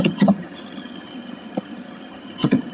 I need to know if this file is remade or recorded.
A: remade